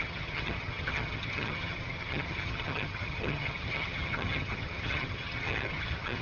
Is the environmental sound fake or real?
fake